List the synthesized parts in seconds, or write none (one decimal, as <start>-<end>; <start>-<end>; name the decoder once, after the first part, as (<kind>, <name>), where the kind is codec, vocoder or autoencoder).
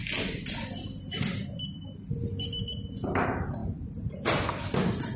none